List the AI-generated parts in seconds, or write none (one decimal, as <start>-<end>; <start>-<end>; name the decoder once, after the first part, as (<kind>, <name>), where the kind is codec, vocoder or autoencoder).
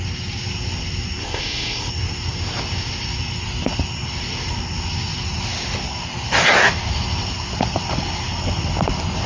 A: 1.2-1.9 (codec, ZipCodec)